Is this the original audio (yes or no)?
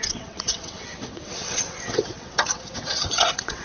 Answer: no